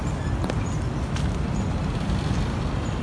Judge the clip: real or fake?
real